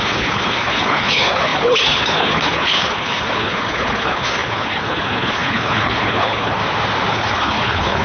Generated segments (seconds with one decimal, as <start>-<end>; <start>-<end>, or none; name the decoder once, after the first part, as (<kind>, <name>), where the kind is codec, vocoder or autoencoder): 0.0-6.6 (codec, HILCodec); 7.1-8.0

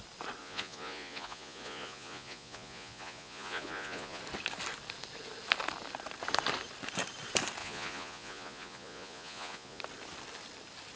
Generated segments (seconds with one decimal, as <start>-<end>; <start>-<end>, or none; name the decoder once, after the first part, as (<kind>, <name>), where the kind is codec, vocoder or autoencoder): 0.4-4.2 (vocoder, Vocos); 7.6-9.8